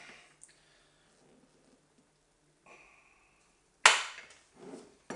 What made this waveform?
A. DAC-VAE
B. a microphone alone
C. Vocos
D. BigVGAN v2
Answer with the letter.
B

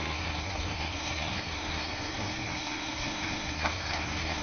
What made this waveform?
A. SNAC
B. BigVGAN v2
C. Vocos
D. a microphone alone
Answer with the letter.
A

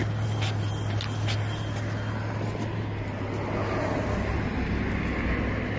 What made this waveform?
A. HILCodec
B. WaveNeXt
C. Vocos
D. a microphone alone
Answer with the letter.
D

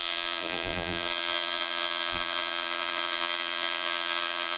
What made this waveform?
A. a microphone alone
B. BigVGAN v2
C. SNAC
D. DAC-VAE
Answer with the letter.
B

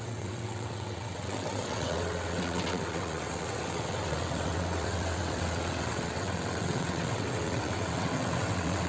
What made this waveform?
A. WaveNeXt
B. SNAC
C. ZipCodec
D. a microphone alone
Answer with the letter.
A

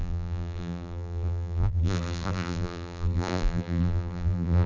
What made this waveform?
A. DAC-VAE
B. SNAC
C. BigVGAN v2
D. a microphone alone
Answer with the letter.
C